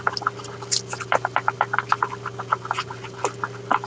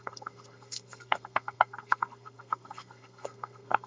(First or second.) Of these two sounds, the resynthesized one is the second